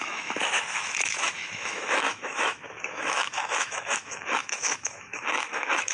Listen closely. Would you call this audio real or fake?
fake